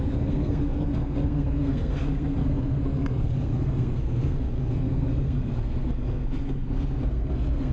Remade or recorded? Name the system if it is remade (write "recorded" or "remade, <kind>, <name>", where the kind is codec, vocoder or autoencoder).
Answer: remade, codec, SNAC